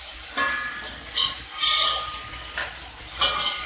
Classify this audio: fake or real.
real